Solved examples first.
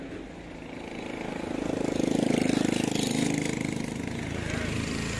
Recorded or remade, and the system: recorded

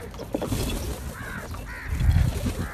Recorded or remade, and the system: recorded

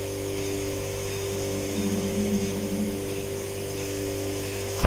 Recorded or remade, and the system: remade, autoencoder, DAC-VAE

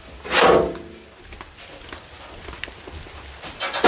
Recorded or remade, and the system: recorded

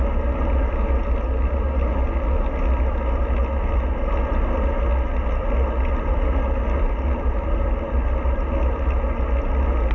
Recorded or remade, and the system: recorded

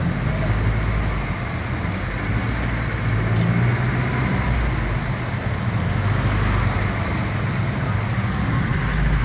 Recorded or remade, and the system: recorded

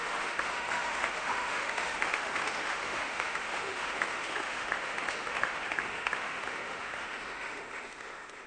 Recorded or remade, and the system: remade, autoencoder, DAC-VAE